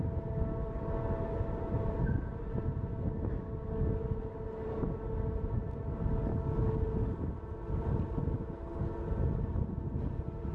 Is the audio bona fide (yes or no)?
yes